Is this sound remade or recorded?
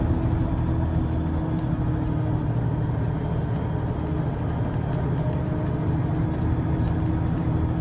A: recorded